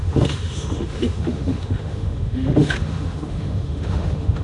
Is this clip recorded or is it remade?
remade